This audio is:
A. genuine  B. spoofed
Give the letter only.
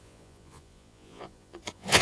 B